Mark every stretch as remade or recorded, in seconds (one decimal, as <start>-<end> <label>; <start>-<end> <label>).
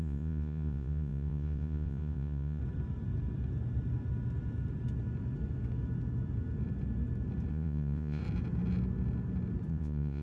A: 0.0-2.6 remade; 2.6-7.5 recorded; 7.5-8.2 remade; 8.2-9.7 recorded; 9.7-10.2 remade